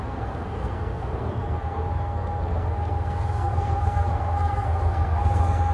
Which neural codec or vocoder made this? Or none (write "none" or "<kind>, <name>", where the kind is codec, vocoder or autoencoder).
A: codec, SNAC